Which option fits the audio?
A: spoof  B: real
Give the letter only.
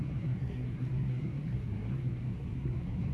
A